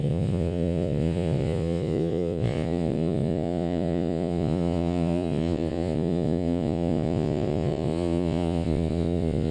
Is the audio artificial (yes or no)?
yes